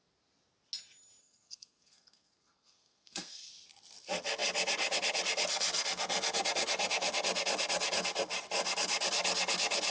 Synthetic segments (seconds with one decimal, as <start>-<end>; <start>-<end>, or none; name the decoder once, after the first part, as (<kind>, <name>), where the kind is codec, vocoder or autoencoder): 1.2-3.5 (codec, SNAC)